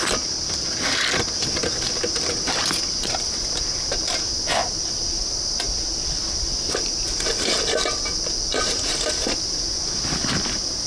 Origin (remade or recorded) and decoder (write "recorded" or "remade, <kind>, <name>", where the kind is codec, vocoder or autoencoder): recorded